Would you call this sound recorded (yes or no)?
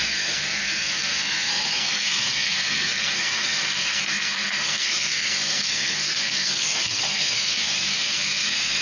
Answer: no